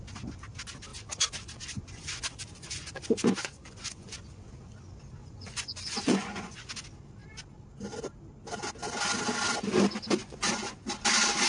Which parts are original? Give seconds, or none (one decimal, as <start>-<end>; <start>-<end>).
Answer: 0.0-0.9; 4.5-5.2; 6.7-10.2; 10.9-11.5